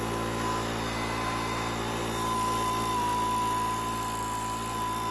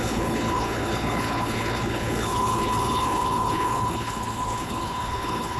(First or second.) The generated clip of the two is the second